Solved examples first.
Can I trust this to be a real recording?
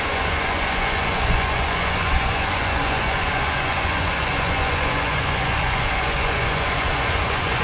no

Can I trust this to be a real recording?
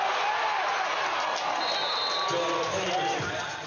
yes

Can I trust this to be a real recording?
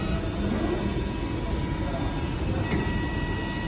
yes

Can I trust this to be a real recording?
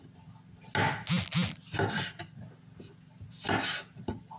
yes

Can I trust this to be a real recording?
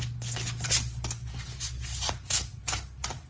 yes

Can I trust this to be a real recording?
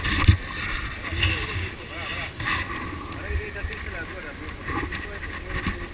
yes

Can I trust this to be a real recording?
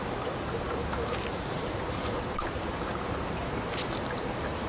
no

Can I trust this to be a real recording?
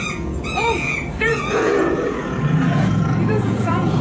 no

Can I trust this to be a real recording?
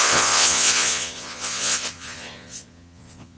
no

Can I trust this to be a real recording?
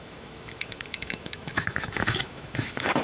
no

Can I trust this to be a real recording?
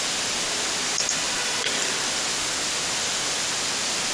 yes